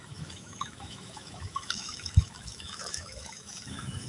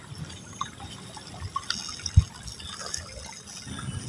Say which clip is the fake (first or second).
first